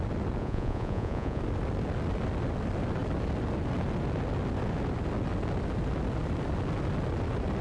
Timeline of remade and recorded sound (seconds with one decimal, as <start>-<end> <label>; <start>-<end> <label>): 0.0-0.4 recorded; 0.4-1.4 remade; 1.4-7.6 recorded